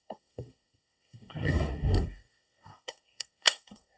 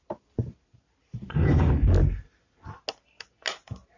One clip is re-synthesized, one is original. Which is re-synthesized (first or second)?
first